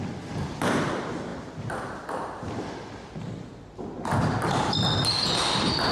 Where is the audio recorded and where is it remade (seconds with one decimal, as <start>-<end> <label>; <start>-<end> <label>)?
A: 0.0-5.9 recorded